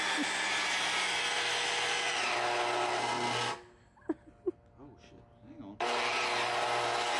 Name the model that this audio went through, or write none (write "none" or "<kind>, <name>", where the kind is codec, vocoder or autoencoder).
none